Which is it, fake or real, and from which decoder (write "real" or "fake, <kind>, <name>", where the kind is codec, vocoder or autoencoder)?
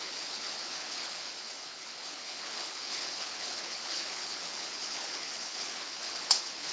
fake, codec, HILCodec